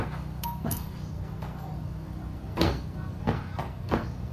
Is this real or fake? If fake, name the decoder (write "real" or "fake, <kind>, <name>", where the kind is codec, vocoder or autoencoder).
fake, codec, SNAC